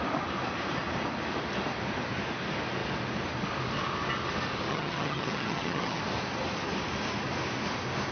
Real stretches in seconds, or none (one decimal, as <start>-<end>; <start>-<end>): 0.0-4.7; 6.0-8.1